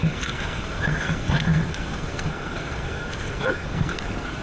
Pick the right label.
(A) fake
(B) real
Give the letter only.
A